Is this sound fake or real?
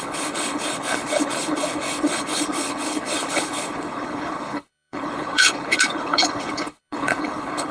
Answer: fake